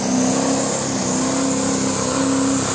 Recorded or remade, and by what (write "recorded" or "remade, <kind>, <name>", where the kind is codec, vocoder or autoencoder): recorded